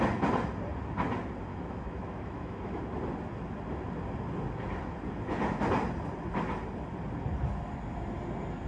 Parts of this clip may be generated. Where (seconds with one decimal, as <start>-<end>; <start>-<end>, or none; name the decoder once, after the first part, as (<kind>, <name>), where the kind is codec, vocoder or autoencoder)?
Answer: 1.5-2.8 (autoencoder, DAC-VAE)